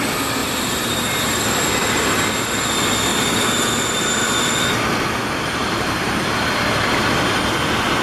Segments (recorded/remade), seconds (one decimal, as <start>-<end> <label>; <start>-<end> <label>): 0.0-0.4 recorded; 0.4-1.4 remade; 1.4-5.6 recorded; 5.6-7.1 remade; 7.1-8.0 recorded